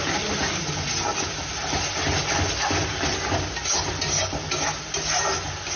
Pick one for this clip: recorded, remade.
recorded